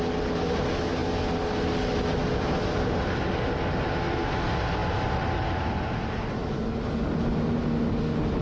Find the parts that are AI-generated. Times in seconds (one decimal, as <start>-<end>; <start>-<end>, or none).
none